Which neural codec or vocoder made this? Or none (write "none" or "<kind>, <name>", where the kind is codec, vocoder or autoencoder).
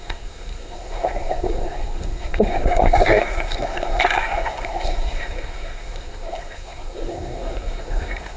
codec, SNAC